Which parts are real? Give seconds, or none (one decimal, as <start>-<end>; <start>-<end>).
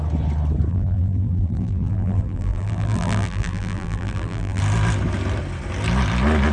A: 0.0-0.7; 4.6-6.5